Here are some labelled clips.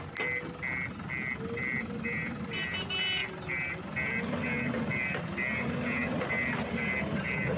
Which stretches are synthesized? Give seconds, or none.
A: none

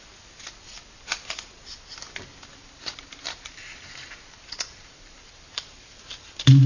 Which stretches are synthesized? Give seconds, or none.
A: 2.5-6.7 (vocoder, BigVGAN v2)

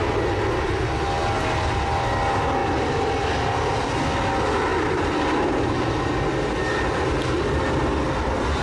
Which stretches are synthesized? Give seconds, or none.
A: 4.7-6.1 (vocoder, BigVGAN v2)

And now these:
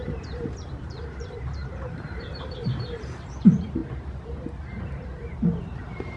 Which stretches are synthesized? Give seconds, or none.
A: 0.0-3.8 (vocoder, BigVGAN v2); 5.6-6.2